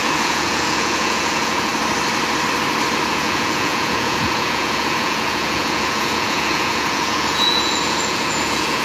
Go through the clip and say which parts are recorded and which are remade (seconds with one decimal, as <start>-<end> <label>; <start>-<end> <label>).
0.0-1.7 remade; 1.7-3.1 recorded; 3.1-8.8 remade